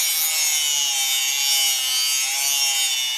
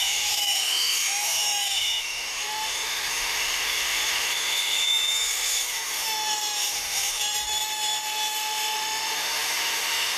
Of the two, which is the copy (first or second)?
second